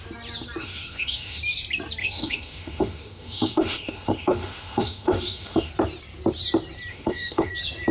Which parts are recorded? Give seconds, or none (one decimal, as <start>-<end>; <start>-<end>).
0.0-0.6; 1.4-2.0; 5.7-6.9; 7.5-7.9